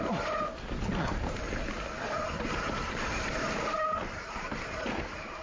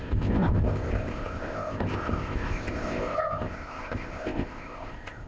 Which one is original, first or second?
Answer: first